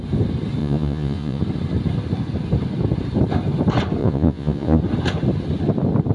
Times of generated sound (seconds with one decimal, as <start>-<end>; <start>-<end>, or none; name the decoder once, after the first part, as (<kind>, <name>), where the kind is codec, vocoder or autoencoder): 0.6-1.4 (vocoder, Vocos); 4.0-4.8